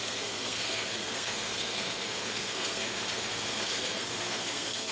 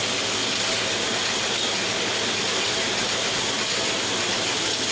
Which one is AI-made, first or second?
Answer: first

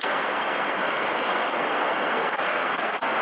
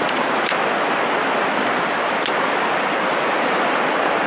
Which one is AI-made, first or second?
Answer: first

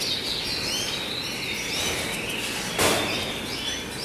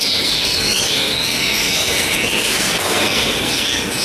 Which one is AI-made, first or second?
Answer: second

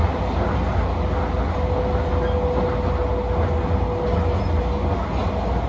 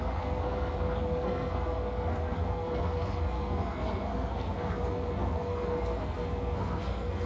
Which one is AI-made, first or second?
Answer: second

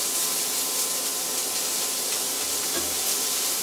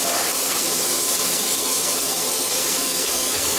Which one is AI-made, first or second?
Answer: second